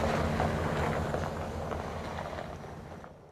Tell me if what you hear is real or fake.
real